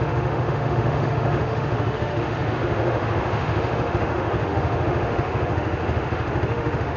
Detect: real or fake fake